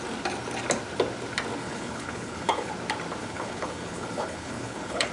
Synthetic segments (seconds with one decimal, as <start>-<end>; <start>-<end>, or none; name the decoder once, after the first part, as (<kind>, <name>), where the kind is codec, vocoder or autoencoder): 1.6-2.7 (codec, HILCodec); 3.2-5.1